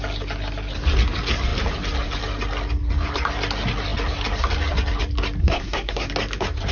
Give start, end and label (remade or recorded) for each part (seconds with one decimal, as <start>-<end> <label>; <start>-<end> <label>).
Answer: 0.0-5.4 recorded; 5.4-6.1 remade; 6.1-6.7 recorded